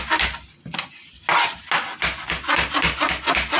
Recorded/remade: recorded